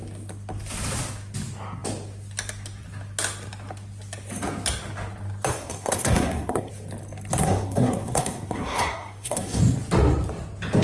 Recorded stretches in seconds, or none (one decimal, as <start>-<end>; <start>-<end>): 0.0-5.5; 6.7-7.4; 9.6-10.8